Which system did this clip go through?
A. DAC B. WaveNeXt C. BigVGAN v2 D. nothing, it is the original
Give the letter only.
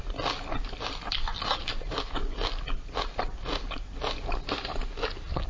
D